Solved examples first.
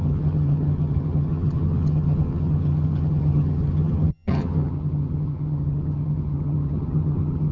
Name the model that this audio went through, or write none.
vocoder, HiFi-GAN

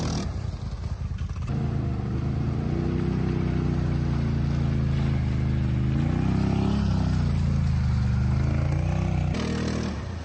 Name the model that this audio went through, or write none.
none